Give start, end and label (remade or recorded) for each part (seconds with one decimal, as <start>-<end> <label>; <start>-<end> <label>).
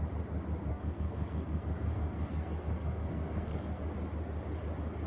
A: 0.0-0.7 recorded; 0.7-3.8 remade; 3.8-5.1 recorded